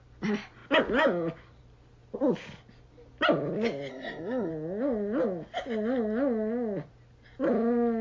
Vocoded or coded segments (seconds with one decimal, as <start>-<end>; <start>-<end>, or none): 3.9-4.5